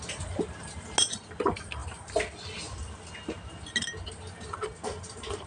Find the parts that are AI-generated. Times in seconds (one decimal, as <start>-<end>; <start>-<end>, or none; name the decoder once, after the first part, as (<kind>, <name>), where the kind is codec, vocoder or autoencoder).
none